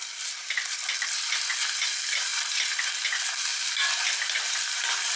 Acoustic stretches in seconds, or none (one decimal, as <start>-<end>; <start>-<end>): 0.0-0.4; 1.5-2.3; 2.8-5.2